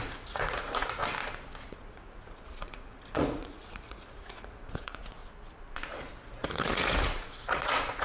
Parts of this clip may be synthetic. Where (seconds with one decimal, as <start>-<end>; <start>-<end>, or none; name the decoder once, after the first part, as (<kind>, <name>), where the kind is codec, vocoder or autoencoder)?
0.0-1.0 (vocoder, Vocos); 1.6-5.2; 6.3-8.0